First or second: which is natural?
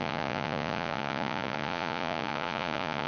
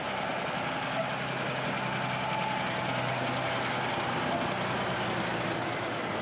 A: second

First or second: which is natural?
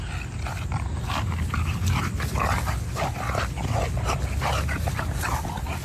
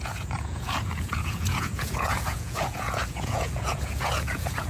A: first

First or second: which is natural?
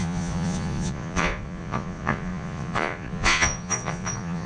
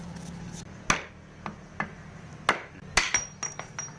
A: second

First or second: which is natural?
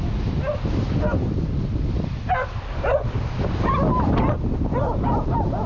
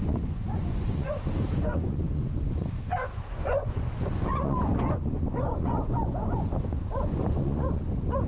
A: first